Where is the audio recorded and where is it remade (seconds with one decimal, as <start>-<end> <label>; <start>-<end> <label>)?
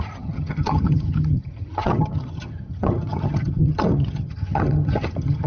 0.0-5.5 remade